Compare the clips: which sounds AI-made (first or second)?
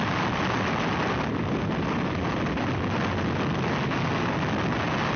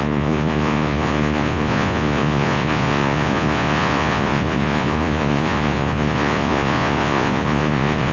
second